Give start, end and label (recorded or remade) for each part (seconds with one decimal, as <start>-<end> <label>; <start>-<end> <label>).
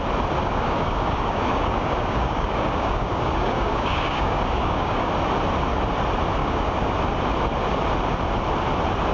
0.0-0.4 recorded; 0.4-5.1 remade; 5.1-6.4 recorded; 6.4-6.9 remade; 6.9-9.1 recorded